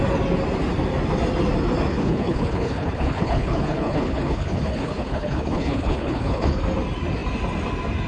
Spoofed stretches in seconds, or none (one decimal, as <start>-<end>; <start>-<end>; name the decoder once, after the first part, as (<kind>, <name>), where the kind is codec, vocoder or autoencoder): 1.9-6.6 (codec, HILCodec)